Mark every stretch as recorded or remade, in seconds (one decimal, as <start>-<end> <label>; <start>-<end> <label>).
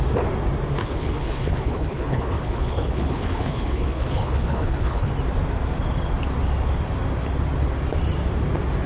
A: 0.0-0.8 recorded; 0.8-5.1 remade; 5.1-8.9 recorded